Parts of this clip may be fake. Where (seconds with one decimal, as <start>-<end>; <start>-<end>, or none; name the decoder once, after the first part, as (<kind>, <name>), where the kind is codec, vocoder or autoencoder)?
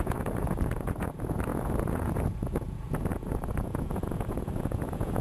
0.0-5.2 (vocoder, Vocos)